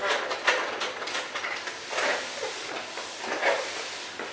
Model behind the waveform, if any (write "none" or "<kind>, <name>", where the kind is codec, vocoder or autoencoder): none